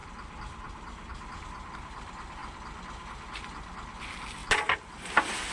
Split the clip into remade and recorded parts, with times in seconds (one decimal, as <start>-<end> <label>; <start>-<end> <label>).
0.0-5.5 recorded